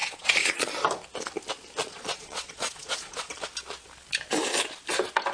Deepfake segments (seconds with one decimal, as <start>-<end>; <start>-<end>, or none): 0.0-0.7; 1.8-3.3